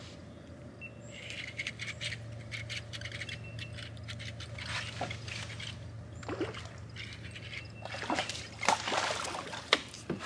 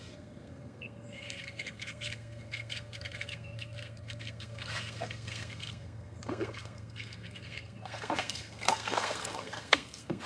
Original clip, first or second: first